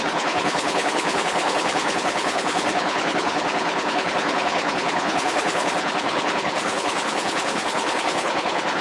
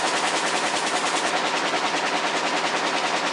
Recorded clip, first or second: second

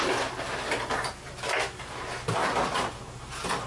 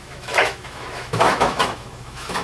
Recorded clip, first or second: first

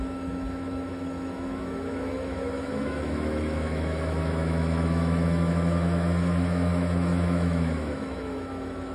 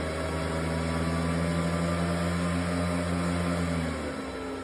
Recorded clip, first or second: second